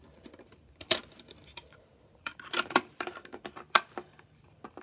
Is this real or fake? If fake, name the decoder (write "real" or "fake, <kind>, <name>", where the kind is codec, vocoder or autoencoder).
fake, vocoder, BigVGAN v2